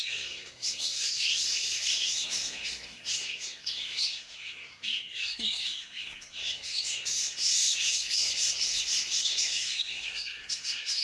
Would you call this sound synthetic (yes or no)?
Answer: yes